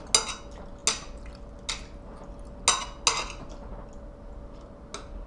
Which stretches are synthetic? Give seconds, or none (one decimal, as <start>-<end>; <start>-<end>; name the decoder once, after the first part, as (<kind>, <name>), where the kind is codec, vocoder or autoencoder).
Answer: none